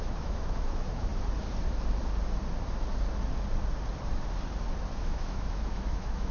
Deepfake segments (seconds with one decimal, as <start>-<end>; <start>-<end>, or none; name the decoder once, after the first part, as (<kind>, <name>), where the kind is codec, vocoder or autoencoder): 0.0-1.1 (autoencoder, DAC-VAE); 4.9-6.3